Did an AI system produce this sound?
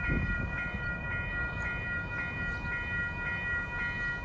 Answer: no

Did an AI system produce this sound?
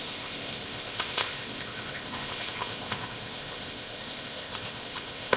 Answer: yes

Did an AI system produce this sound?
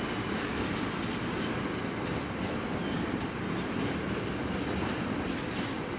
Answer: no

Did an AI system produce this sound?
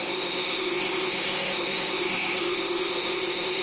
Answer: yes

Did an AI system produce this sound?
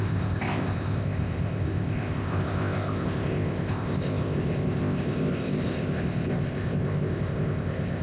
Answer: yes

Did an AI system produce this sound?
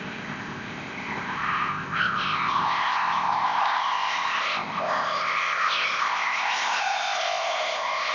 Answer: yes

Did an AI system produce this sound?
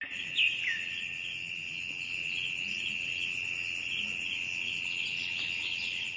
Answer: no